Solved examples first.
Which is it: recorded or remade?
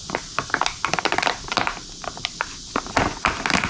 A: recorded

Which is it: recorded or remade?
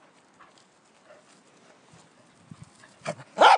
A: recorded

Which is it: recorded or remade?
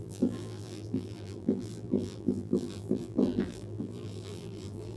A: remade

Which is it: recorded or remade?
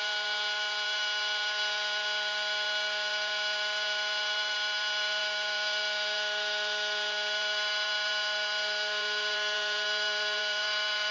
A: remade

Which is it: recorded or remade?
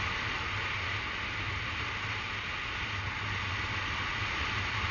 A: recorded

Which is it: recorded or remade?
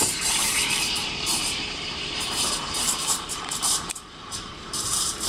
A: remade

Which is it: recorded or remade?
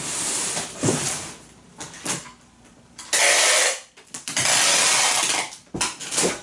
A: recorded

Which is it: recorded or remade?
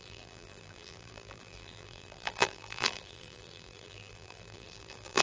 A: remade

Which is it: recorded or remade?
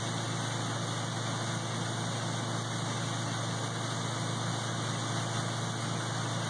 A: recorded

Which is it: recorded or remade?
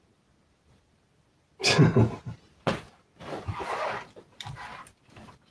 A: recorded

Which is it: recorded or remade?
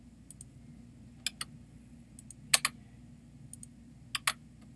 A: recorded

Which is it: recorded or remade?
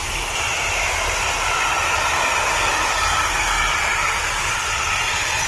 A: recorded